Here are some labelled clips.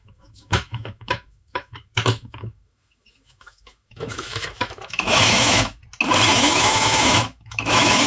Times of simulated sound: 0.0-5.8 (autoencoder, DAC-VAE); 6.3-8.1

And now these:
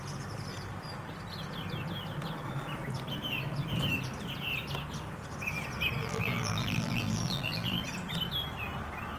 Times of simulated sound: 6.0-7.8 (vocoder, BigVGAN v2)

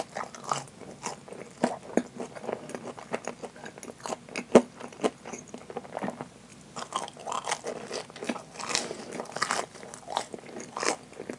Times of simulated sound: none

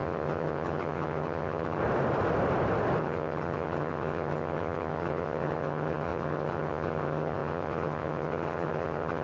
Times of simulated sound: 0.0-1.8 (vocoder, HiFi-GAN); 3.0-9.2

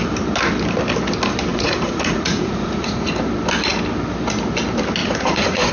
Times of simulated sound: 1.5-3.1 (vocoder, Vocos); 5.0-5.7

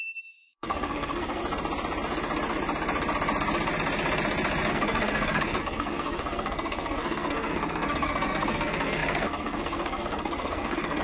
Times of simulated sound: 0.0-1.4 (codec, SNAC); 4.7-11.0

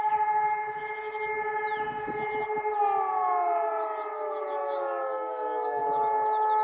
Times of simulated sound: 4.6-5.8 (codec, DAC)

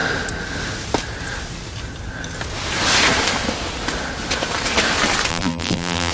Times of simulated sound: 5.3-6.1 (vocoder, BigVGAN v2)